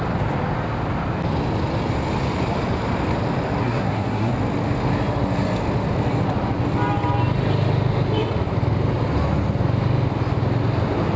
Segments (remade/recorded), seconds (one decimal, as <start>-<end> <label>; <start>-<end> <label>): 0.0-3.6 recorded; 3.6-4.3 remade; 4.3-11.2 recorded